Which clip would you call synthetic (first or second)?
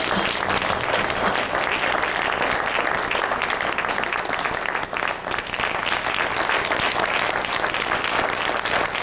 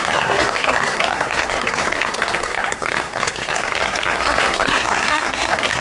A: second